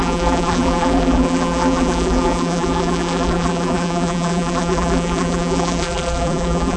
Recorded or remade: remade